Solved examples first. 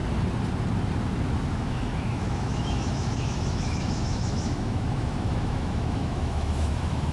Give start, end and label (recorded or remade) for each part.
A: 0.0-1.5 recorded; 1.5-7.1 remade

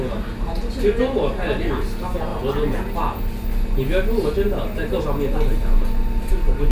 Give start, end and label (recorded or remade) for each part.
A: 0.0-6.7 recorded

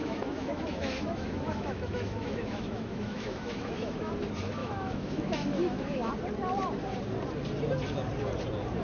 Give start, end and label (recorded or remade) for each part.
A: 0.0-4.1 remade; 4.1-4.6 recorded; 4.6-6.1 remade; 6.1-8.8 recorded

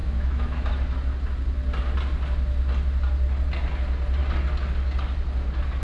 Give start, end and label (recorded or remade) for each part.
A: 0.0-0.7 remade; 0.7-5.8 recorded

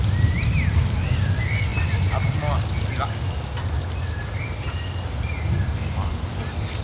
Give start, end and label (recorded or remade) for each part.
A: 0.0-6.8 recorded

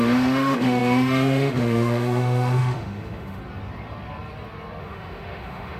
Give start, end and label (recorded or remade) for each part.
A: 0.0-3.4 remade; 3.4-4.8 recorded; 4.8-5.8 remade